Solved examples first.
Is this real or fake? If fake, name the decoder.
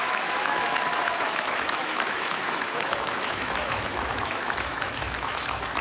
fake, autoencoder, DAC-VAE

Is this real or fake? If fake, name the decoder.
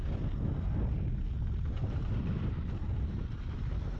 real